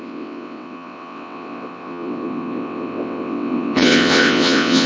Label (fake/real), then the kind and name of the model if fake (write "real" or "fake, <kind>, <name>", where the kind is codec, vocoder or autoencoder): fake, vocoder, WaveNeXt